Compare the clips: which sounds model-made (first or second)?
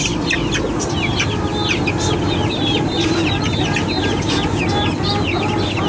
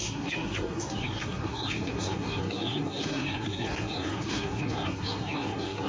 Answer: second